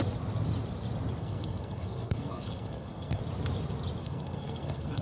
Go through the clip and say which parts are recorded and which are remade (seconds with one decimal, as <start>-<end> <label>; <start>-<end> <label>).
0.0-1.2 recorded; 1.2-3.2 remade; 3.2-4.0 recorded; 4.0-5.0 remade